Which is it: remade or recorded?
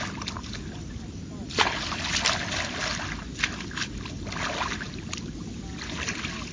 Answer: recorded